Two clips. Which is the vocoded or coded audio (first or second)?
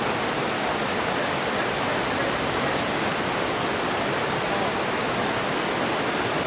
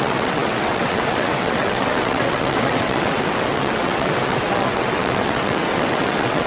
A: second